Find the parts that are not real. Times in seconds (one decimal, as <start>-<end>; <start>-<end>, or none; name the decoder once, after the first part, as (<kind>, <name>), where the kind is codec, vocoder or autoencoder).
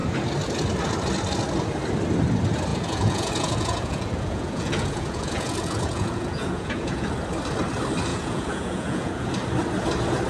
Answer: 2.7-7.1 (vocoder, Vocos); 8.1-9.3